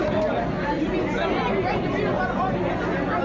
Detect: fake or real real